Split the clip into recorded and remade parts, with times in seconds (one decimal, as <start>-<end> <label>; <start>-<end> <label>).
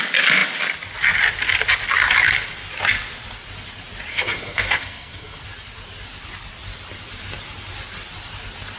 0.0-4.1 recorded; 4.1-5.4 remade; 5.4-8.8 recorded